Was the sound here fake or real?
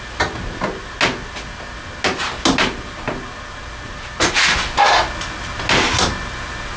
real